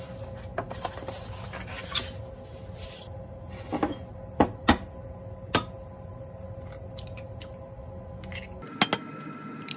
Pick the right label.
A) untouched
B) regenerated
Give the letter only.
A